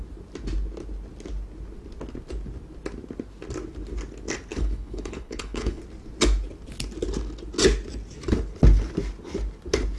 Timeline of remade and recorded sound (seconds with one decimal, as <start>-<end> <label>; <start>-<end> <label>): 0.0-4.5 recorded; 4.5-5.8 remade; 5.8-10.0 recorded